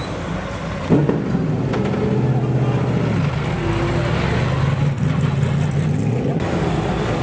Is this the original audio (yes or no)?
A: yes